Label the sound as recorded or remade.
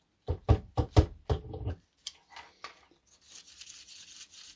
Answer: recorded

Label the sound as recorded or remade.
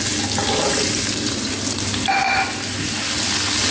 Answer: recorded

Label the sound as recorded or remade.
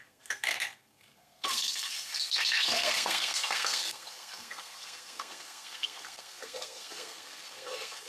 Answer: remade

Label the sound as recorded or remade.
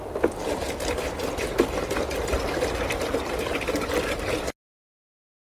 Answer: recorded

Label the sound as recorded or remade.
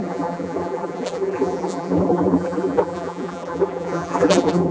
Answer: remade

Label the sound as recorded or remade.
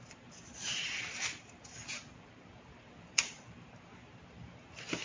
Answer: remade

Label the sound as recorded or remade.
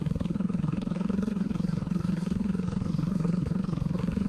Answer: remade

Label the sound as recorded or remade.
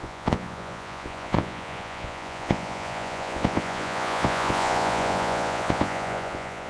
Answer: remade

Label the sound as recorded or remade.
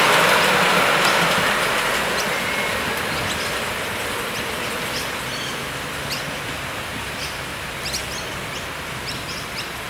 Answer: recorded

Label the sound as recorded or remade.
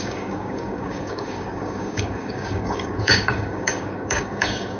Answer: remade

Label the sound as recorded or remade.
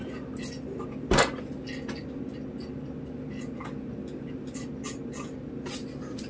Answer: recorded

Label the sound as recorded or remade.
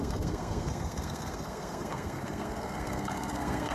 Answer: remade